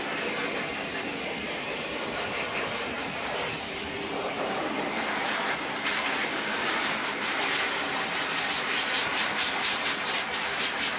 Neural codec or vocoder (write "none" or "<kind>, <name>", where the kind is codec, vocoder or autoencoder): vocoder, BigVGAN v2